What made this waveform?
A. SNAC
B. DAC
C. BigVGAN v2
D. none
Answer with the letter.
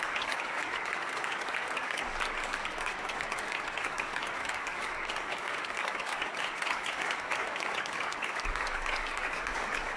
B